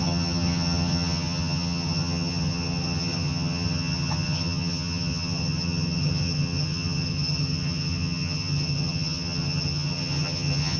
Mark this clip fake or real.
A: fake